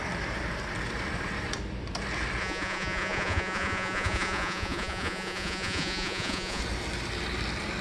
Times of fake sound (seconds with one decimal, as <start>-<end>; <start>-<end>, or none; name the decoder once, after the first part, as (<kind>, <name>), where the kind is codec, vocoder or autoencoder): 2.4-6.6 (vocoder, Vocos)